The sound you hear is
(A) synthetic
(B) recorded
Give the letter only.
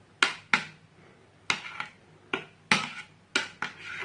B